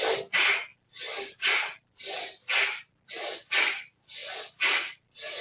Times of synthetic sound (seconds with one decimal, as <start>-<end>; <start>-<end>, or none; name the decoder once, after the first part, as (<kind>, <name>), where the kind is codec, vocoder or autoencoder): none